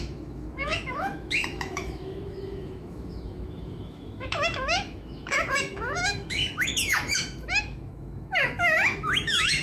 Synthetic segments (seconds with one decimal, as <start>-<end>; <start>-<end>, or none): 0.0-9.6